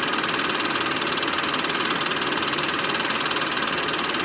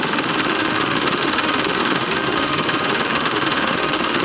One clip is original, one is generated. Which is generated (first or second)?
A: second